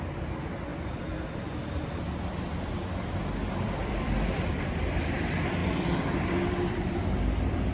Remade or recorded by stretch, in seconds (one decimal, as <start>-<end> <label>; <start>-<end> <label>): 0.0-0.7 remade; 0.7-3.5 recorded; 3.5-7.7 remade